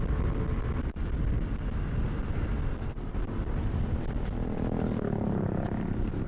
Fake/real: real